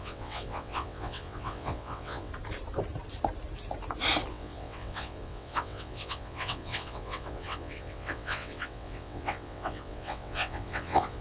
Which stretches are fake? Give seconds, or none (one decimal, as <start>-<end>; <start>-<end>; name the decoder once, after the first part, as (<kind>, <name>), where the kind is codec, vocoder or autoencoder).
0.0-2.3 (vocoder, WaveNeXt); 4.3-11.2